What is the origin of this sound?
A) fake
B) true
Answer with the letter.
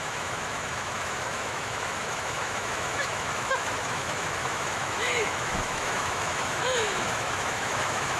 A